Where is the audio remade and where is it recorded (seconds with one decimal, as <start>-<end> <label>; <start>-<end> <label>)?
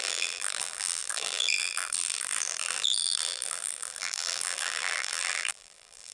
0.0-6.1 remade